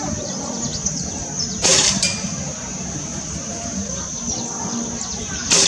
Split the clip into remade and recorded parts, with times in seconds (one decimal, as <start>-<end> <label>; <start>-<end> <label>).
0.0-4.2 remade; 4.2-5.2 recorded; 5.2-5.7 remade